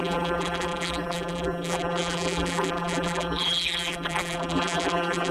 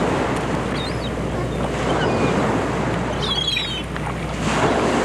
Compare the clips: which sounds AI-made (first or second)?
first